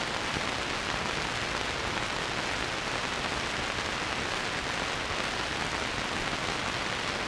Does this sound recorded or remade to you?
recorded